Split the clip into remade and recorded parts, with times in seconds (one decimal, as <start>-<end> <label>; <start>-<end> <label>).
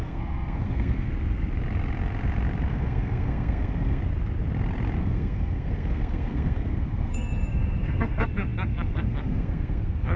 0.0-1.1 remade; 1.1-2.7 recorded; 2.7-4.0 remade; 4.0-5.0 recorded; 5.0-10.2 remade